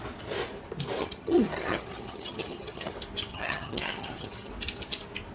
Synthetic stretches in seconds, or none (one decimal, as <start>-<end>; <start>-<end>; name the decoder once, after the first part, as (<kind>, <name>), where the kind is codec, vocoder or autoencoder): 1.0-2.9 (vocoder, HiFi-GAN); 3.3-4.5